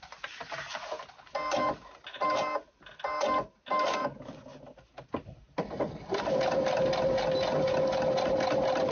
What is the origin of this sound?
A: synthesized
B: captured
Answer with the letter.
B